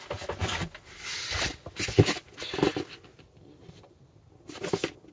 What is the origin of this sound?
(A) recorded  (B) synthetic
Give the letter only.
A